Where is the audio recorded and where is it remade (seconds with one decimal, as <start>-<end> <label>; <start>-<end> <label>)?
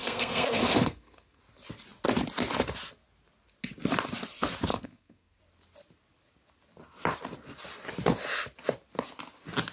0.0-1.4 remade; 1.4-4.7 recorded; 4.7-5.4 remade; 5.4-9.7 recorded